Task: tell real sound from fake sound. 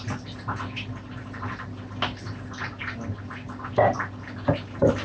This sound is real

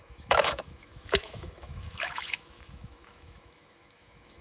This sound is fake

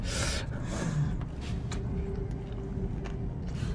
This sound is real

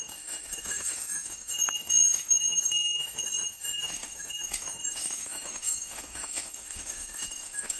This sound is fake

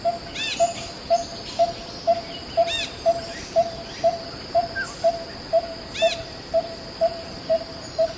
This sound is real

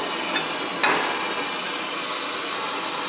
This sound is real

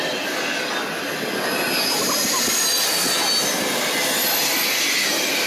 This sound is real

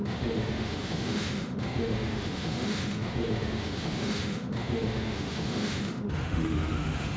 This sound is fake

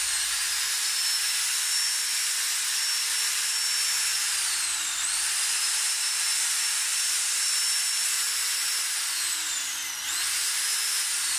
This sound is real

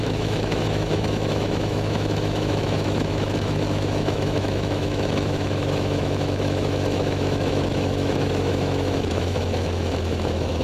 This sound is fake